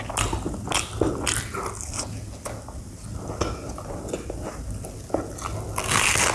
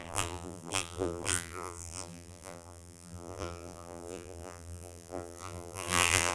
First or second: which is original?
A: first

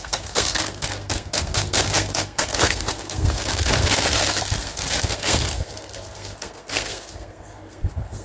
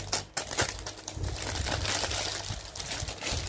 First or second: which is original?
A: second